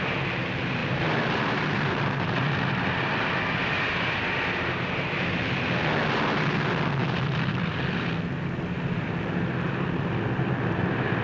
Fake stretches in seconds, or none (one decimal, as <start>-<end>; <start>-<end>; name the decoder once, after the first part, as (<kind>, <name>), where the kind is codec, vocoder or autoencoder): 0.8-5.9 (vocoder, BigVGAN v2); 7.0-7.8